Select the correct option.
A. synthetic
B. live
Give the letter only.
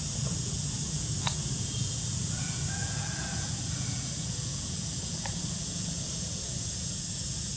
A